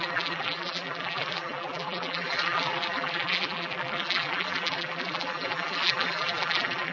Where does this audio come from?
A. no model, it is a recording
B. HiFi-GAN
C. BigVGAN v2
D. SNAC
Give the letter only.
C